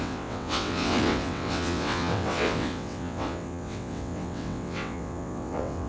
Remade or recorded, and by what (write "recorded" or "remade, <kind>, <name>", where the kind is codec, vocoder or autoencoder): remade, vocoder, WaveNeXt